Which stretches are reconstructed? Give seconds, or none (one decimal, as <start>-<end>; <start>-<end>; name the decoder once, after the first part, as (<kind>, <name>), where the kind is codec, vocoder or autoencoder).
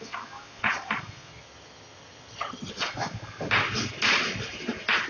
1.3-2.7 (vocoder, HiFi-GAN)